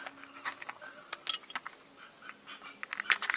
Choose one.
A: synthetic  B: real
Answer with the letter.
B